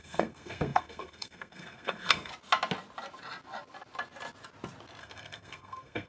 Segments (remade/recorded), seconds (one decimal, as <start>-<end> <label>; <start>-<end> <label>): 0.0-2.3 remade; 2.3-5.0 recorded; 5.0-6.1 remade